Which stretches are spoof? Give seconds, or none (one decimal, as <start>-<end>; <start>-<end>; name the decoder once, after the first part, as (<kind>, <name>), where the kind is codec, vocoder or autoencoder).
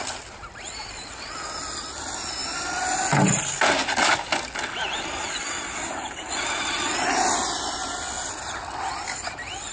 none